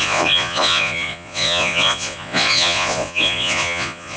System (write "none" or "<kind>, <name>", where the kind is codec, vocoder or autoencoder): vocoder, Vocos